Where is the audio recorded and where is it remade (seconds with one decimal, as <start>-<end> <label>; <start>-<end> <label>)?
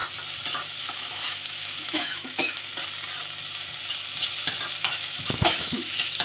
0.0-0.8 recorded; 0.8-2.7 remade; 2.7-4.8 recorded; 4.8-6.2 remade